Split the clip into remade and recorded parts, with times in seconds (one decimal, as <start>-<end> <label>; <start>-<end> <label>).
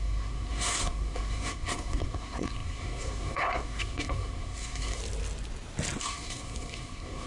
0.0-5.0 remade; 5.0-6.0 recorded; 6.0-7.3 remade